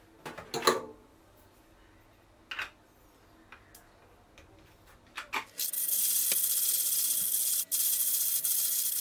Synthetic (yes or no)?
no